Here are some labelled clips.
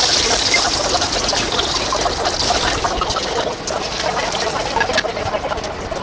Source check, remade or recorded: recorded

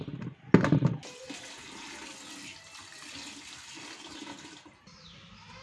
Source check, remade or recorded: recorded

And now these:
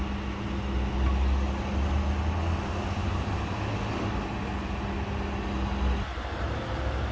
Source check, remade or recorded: recorded